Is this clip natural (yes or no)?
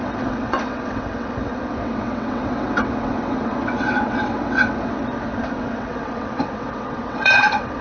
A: no